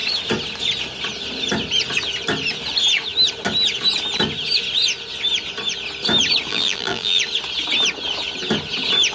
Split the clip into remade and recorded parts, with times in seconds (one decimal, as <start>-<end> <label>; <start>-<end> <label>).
0.0-6.5 recorded; 6.5-7.2 remade; 7.2-9.1 recorded